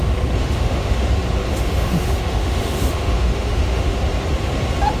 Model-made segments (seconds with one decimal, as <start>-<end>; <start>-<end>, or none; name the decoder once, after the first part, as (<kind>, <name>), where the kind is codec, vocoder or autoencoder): 0.4-1.1 (autoencoder, DAC-VAE); 1.5-4.0